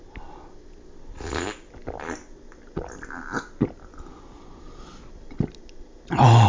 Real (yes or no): yes